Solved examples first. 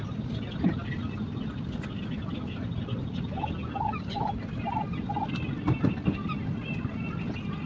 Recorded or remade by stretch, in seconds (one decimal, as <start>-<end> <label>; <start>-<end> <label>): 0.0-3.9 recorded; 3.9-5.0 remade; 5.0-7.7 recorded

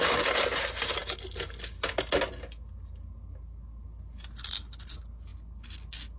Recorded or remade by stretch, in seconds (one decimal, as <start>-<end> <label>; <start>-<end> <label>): 0.0-6.2 recorded

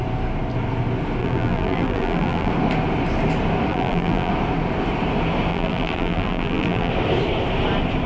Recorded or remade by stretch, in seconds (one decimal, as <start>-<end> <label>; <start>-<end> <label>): 0.0-1.2 recorded; 1.2-2.5 remade; 2.5-3.7 recorded; 3.7-4.3 remade; 4.3-5.5 recorded; 5.5-6.9 remade; 6.9-8.1 recorded

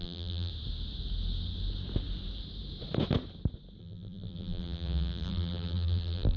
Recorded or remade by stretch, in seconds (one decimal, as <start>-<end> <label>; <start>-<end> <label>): 0.0-0.5 remade; 0.5-3.8 recorded; 3.8-6.4 remade

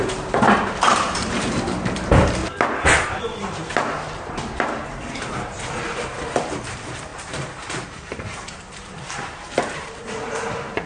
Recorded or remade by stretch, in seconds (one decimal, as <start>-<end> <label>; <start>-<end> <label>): 0.0-2.4 remade; 2.4-3.2 recorded; 3.2-10.9 remade

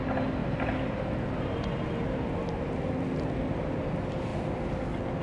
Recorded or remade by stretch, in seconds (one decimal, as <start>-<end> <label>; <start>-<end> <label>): 0.0-0.4 recorded; 0.4-1.6 remade; 1.6-5.2 recorded